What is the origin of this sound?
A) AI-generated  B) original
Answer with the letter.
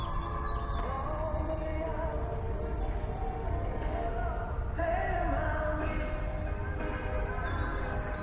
B